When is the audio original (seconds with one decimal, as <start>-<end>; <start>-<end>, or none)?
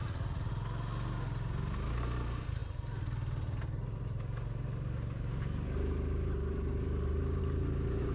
0.5-8.1